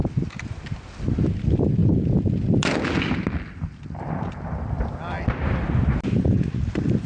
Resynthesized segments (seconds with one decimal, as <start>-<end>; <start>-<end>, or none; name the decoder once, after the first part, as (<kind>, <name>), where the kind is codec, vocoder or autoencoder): none